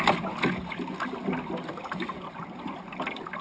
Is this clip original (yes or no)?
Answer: yes